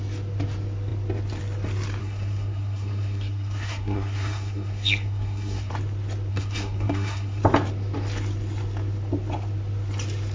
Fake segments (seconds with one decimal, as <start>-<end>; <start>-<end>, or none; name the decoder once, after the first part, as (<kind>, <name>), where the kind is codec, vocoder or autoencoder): 2.0-5.7 (codec, SNAC); 6.3-7.4